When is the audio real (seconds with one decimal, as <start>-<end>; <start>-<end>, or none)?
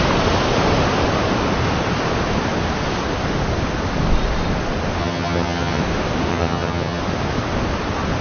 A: 0.0-5.0; 5.8-6.3; 7.0-8.2